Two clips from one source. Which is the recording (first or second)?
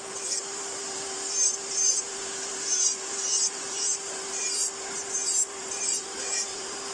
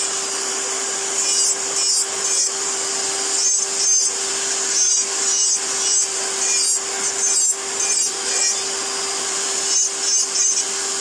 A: second